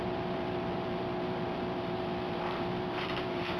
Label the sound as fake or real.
fake